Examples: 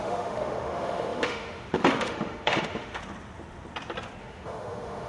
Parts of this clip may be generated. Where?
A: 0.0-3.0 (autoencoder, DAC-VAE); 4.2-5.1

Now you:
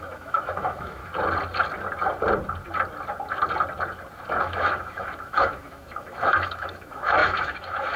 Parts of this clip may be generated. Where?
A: 0.0-1.0 (autoencoder, DAC-VAE); 4.4-8.0

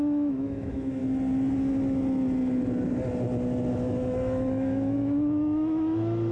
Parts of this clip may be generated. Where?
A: 0.0-1.0 (autoencoder, DAC-VAE); 3.7-6.3

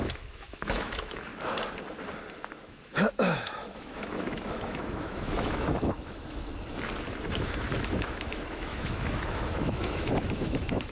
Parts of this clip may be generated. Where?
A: 0.0-1.3 (autoencoder, DAC-VAE); 2.6-6.5; 7.1-10.9

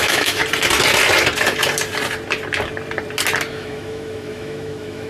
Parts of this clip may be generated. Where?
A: 0.0-0.4 (autoencoder, DAC-VAE); 3.5-5.1

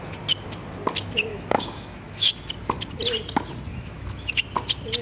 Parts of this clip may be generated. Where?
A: 1.3-2.3 (autoencoder, DAC-VAE); 3.7-4.4

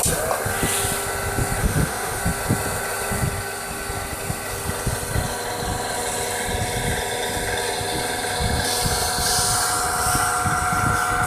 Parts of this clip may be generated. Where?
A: 1.6-2.2 (autoencoder, DAC-VAE)